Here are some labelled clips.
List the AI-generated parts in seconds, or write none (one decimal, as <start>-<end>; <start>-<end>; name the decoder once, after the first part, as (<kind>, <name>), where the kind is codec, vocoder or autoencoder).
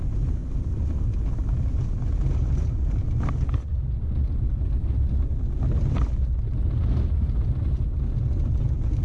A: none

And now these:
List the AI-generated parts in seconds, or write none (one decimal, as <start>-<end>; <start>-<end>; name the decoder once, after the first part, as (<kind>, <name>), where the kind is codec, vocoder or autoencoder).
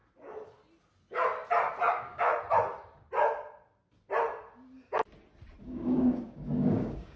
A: 1.9-2.3 (codec, DAC); 5.6-7.2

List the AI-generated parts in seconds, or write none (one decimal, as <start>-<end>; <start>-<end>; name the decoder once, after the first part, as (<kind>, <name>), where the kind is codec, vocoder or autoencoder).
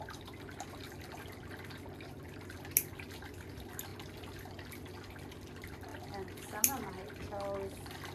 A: none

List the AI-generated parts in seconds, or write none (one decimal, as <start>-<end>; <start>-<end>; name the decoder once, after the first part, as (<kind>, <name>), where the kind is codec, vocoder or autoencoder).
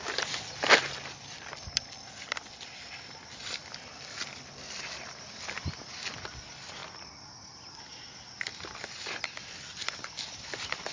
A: none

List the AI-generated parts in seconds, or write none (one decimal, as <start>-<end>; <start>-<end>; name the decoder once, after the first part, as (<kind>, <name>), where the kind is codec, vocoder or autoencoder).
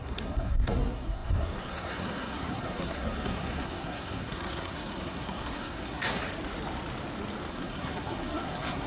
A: 0.0-6.2 (codec, SNAC); 7.5-8.9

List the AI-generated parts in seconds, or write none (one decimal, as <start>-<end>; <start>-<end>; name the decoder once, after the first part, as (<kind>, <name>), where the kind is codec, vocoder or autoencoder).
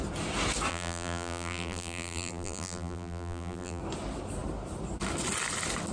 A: 0.7-3.8 (vocoder, BigVGAN v2)